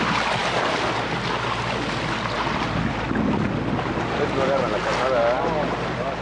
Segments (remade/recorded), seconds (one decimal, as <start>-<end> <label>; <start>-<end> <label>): 0.0-6.2 recorded